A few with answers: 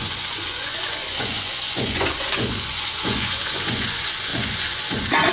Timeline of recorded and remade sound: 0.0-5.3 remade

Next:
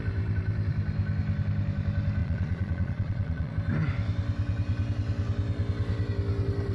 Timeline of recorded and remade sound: 0.0-2.2 recorded; 2.2-3.5 remade; 3.5-6.7 recorded

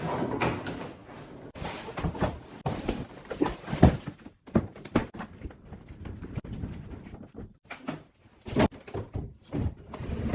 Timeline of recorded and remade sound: 0.0-10.3 recorded

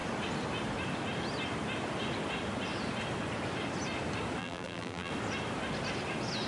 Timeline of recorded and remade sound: 0.0-4.4 recorded; 4.4-5.1 remade; 5.1-6.5 recorded

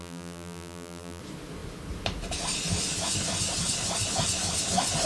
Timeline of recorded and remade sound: 0.0-1.2 remade; 1.2-5.1 recorded

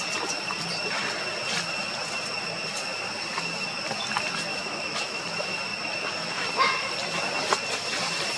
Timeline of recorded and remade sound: 0.0-4.5 recorded; 4.5-5.2 remade; 5.2-8.4 recorded

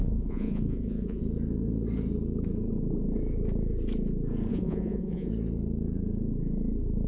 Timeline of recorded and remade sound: 0.0-1.2 remade; 1.2-4.5 recorded; 4.5-5.3 remade; 5.3-7.1 recorded

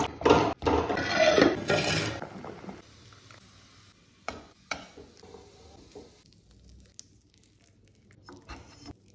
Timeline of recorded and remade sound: 0.0-4.2 recorded; 4.2-5.1 remade; 5.1-9.1 recorded